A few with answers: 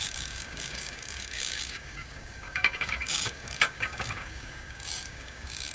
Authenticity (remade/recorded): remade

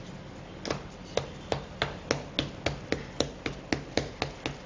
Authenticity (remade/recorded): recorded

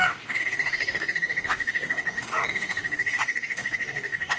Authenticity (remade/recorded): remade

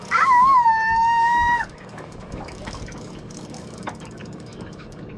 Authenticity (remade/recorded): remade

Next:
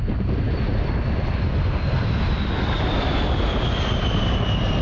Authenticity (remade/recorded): recorded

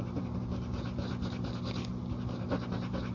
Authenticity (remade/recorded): recorded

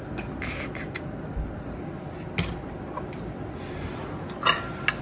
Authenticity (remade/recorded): recorded